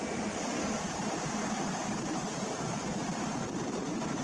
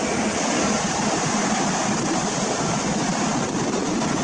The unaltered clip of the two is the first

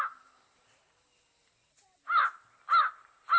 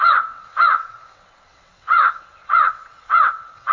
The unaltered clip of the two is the first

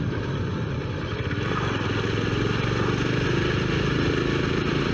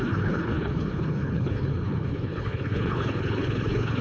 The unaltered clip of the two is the first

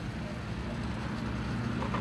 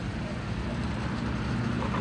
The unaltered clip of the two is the first